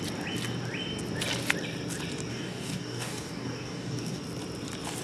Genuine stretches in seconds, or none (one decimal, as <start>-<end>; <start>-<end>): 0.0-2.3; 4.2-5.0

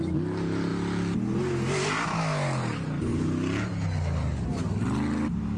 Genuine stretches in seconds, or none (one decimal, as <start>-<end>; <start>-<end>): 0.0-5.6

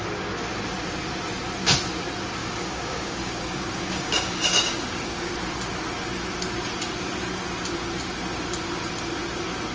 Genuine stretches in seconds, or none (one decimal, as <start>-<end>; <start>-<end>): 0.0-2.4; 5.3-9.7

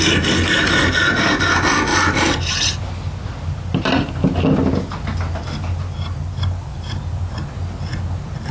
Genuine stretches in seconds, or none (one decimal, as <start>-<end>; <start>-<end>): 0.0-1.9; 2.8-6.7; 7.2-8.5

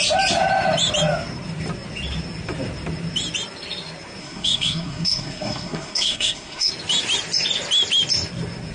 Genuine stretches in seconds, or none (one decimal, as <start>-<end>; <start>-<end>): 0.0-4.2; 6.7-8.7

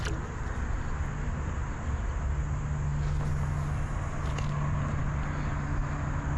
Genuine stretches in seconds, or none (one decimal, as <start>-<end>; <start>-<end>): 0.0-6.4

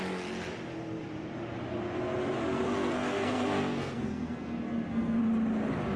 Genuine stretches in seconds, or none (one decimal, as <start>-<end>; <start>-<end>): 0.0-2.4; 5.2-6.0

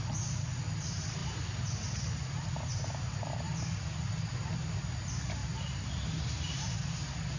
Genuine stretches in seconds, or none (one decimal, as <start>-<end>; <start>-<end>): 0.0-5.4; 6.3-7.4